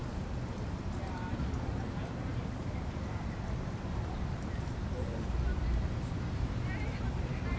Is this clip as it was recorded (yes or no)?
no